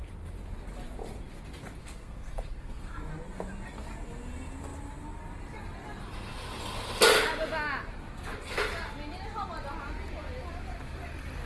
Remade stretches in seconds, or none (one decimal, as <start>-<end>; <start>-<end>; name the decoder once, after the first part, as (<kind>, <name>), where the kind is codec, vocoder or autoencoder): 1.8-3.0 (codec, SNAC)